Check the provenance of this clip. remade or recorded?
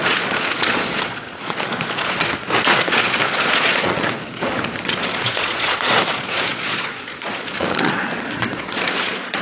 remade